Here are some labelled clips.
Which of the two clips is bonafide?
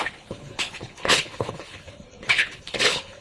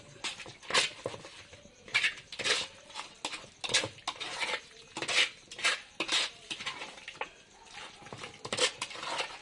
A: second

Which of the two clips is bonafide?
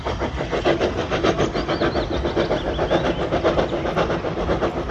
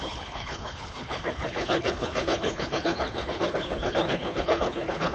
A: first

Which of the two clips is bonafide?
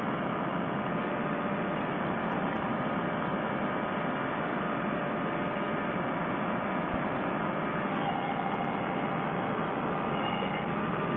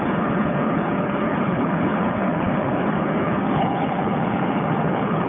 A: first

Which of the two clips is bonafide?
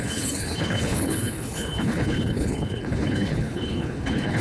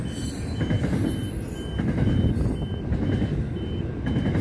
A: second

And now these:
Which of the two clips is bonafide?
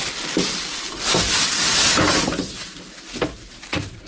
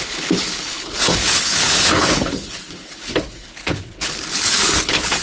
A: first